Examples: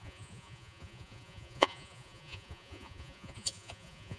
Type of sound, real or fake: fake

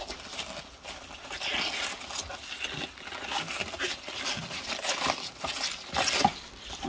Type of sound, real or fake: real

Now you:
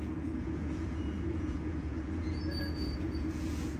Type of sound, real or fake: fake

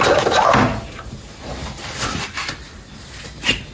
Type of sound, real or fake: real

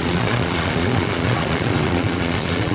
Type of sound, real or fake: fake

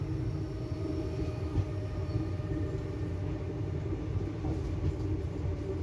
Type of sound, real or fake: real